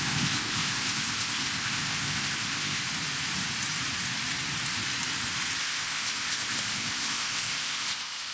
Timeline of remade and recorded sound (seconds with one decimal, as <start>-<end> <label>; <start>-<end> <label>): 0.0-2.8 remade; 2.8-5.6 recorded; 5.6-8.3 remade

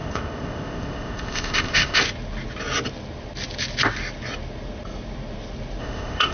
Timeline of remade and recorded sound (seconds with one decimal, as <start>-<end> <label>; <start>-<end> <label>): 0.0-2.0 remade; 2.0-5.8 recorded; 5.8-6.3 remade